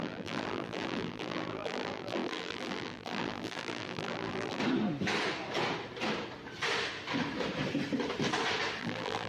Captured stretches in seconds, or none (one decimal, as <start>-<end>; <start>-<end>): 4.6-8.8